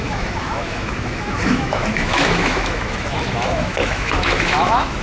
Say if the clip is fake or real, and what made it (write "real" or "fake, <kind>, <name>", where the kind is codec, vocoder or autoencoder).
fake, autoencoder, DAC-VAE